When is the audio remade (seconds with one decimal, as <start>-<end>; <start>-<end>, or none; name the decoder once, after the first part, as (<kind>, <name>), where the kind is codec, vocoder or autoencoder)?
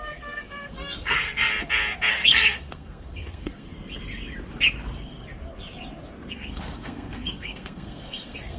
0.0-1.5 (codec, SNAC); 2.1-3.7; 6.3-8.6